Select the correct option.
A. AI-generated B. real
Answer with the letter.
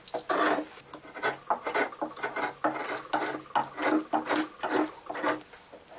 B